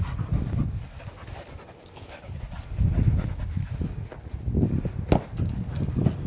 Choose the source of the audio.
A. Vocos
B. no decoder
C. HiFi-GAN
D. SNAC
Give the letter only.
B